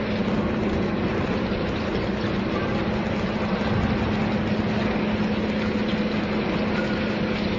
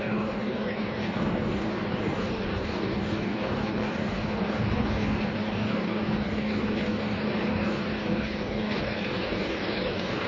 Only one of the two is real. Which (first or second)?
first